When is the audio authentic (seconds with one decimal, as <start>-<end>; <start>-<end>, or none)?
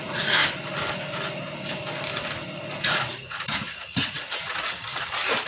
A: 0.4-2.8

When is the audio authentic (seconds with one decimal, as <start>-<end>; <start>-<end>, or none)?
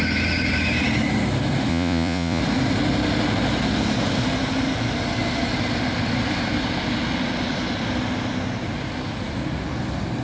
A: 0.0-1.7; 2.4-10.2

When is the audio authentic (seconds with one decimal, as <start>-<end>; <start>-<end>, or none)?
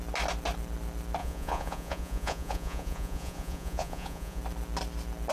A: 0.0-1.2; 4.4-5.3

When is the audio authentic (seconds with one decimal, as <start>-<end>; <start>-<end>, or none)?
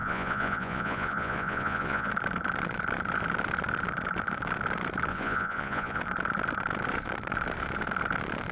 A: 2.1-5.1; 6.0-8.5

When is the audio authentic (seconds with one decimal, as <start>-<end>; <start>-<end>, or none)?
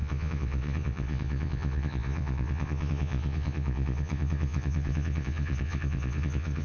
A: none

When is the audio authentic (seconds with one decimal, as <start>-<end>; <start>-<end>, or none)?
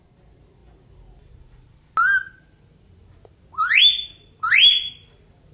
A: 0.0-5.5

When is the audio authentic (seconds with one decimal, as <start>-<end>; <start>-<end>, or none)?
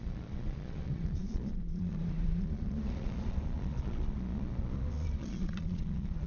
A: none